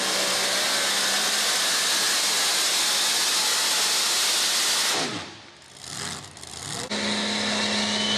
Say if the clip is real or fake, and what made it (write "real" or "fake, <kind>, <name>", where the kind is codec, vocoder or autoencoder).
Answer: real